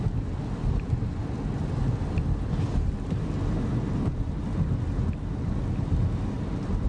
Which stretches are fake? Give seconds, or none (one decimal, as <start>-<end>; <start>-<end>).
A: none